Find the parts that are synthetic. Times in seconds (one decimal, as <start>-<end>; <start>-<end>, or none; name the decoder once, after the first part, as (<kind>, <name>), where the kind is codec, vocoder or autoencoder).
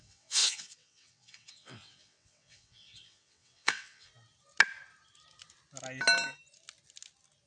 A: 0.0-4.1 (vocoder, WaveNeXt)